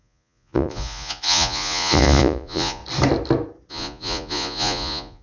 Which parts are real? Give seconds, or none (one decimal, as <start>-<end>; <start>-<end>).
2.8-3.7